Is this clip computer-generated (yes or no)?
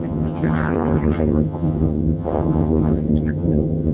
yes